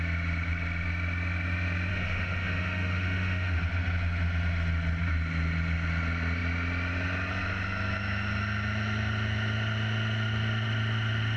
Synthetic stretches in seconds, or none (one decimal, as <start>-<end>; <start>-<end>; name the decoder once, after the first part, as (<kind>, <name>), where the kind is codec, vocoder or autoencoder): 1.9-3.6 (autoencoder, DAC-VAE)